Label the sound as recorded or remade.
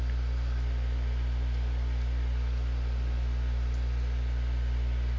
recorded